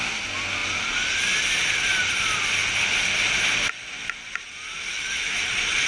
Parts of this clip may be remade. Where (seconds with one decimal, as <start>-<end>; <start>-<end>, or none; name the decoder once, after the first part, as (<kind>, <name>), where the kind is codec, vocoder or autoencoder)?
4.9-5.5 (autoencoder, DAC-VAE)